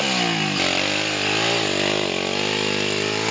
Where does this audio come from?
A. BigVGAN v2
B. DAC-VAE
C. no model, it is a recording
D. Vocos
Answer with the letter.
C